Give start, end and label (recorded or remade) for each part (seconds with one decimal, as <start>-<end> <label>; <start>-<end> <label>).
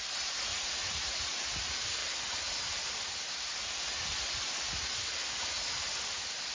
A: 0.0-0.5 recorded; 0.5-1.4 remade; 1.4-6.5 recorded